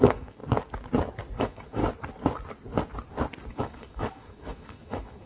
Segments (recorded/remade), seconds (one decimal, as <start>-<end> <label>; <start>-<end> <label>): 0.0-0.4 remade; 0.4-1.4 recorded; 1.4-1.8 remade; 1.8-3.5 recorded; 3.5-5.3 remade